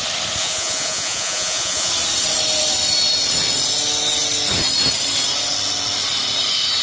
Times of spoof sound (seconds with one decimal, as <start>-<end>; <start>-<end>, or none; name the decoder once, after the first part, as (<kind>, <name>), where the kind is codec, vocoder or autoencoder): 0.4-1.9 (vocoder, Vocos)